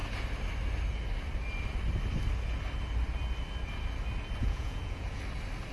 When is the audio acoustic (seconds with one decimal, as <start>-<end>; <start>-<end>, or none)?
0.0-4.4; 5.2-5.7